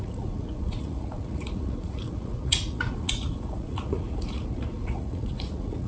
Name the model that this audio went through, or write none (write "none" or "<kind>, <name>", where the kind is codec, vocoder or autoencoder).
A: vocoder, Vocos